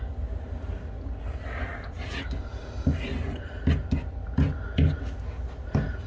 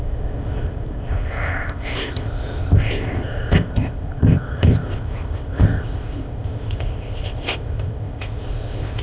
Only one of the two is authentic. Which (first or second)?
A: first